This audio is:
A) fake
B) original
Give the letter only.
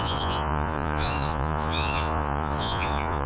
A